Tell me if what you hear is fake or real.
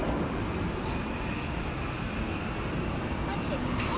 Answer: real